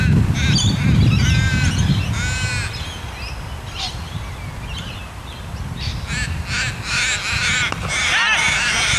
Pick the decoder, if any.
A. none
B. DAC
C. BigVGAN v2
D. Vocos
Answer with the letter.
A